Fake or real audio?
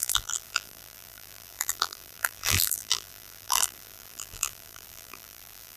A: fake